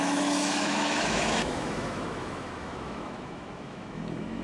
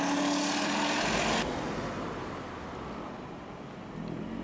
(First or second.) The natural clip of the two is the second